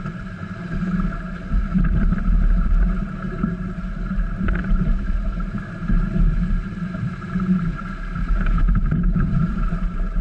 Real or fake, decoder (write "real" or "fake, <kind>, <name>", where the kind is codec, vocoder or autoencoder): fake, vocoder, BigVGAN v2